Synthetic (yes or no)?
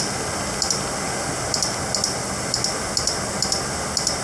no